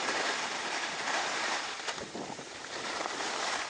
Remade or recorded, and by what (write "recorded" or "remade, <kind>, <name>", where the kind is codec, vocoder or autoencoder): remade, vocoder, BigVGAN v2